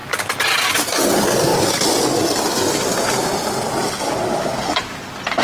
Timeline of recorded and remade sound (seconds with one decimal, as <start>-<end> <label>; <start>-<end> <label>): 0.0-5.4 recorded